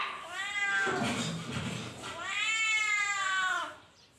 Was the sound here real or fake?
real